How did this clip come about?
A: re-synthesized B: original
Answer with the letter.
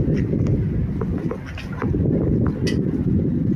B